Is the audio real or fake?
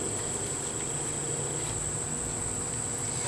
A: real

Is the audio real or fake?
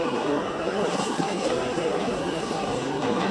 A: fake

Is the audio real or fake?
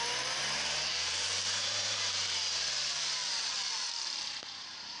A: fake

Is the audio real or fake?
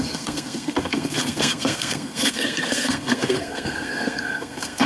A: fake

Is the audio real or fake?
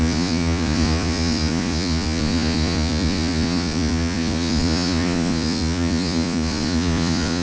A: fake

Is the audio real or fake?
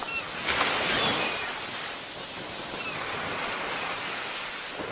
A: real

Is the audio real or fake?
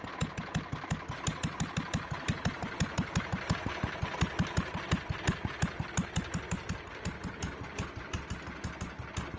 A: real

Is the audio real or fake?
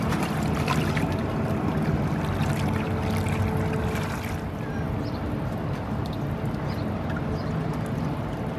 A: real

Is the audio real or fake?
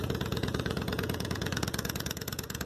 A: fake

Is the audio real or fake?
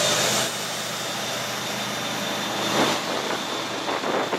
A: real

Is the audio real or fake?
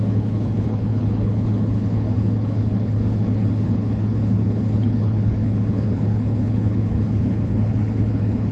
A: fake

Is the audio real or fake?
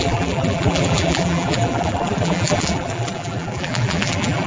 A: fake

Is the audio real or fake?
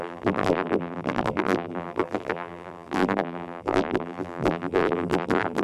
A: fake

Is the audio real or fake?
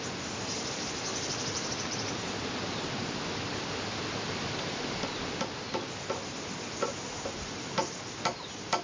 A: real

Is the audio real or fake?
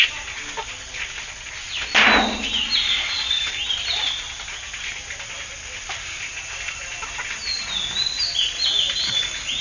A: real